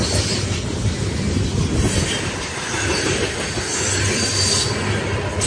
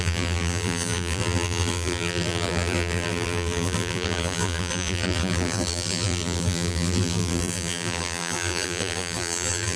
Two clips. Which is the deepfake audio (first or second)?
second